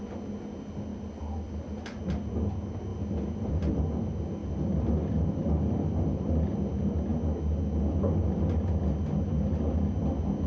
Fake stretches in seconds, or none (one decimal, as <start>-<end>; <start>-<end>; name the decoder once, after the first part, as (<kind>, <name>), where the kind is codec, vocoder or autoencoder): 0.9-2.0 (vocoder, BigVGAN v2); 2.9-3.8; 4.4-6.5